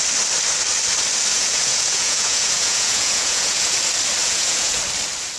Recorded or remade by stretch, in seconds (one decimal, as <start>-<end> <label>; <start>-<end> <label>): 0.0-1.3 recorded; 1.3-3.8 remade; 3.8-4.2 recorded; 4.2-4.8 remade; 4.8-5.4 recorded